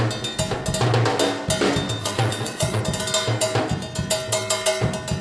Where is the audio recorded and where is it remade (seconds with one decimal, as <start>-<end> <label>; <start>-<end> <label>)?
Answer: 0.0-2.0 recorded; 2.0-2.8 remade; 2.8-5.2 recorded